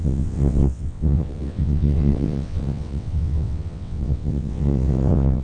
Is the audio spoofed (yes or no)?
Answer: yes